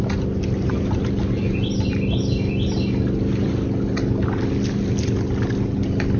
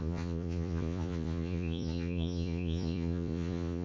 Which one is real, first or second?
first